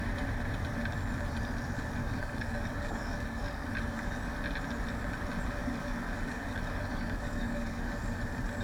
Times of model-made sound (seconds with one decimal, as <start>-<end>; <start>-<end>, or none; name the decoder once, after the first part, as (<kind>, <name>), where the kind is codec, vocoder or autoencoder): 2.0-4.2 (codec, DAC); 5.6-7.9